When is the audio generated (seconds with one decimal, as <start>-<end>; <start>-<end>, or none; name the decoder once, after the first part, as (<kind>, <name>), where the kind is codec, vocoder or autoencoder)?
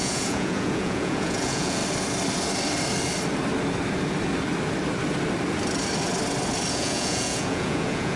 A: 0.0-1.8 (vocoder, Vocos); 6.7-8.2